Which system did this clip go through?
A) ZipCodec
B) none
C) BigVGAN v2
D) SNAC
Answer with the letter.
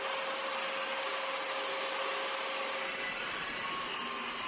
B